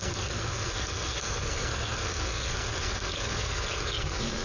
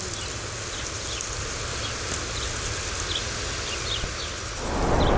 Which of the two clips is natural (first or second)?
second